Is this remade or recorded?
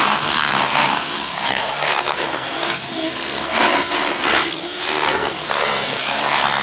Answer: remade